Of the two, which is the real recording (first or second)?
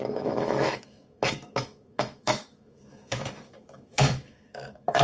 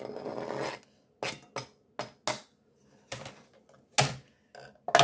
second